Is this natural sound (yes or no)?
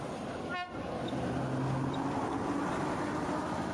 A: yes